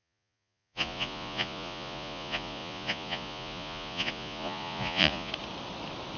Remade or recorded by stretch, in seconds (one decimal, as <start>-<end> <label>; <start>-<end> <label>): 0.0-5.3 remade; 5.3-6.2 recorded